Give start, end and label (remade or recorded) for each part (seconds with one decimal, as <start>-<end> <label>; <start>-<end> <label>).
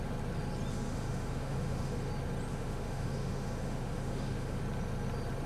0.0-0.7 recorded; 0.7-2.1 remade; 2.1-2.5 recorded; 2.5-4.6 remade; 4.6-5.5 recorded